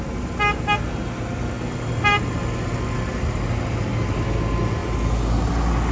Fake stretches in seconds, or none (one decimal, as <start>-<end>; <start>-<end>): none